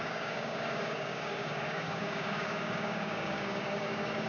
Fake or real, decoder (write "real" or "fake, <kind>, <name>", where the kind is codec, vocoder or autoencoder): fake, codec, DAC